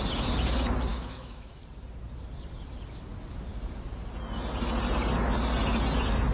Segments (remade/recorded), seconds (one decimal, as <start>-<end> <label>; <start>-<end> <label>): 0.0-0.9 recorded; 0.9-1.6 remade; 1.6-6.3 recorded